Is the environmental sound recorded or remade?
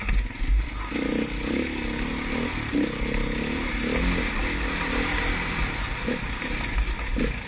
recorded